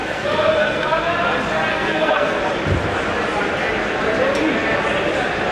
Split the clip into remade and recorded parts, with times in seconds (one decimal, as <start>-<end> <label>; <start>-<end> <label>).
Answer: 0.0-1.1 remade; 1.1-1.7 recorded; 1.7-2.4 remade; 2.4-5.5 recorded